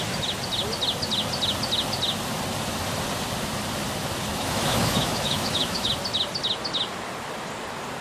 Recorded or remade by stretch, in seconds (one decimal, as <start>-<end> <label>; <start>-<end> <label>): 0.0-4.3 recorded; 4.3-5.9 remade; 5.9-8.0 recorded